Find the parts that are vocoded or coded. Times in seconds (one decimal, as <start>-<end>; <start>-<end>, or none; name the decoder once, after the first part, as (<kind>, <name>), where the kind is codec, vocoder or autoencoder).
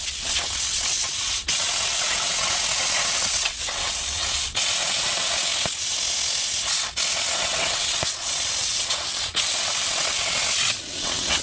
0.0-5.5 (vocoder, WaveNeXt); 7.1-11.4